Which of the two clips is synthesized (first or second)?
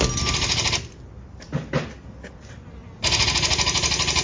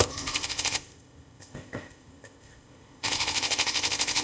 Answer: second